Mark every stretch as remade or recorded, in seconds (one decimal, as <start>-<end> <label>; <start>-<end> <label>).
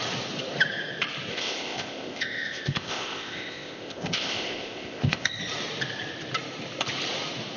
0.0-1.3 recorded; 1.3-5.4 remade; 5.4-7.6 recorded